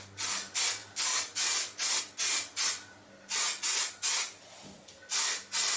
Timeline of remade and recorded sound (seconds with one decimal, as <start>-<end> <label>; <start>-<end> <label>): 0.0-5.8 recorded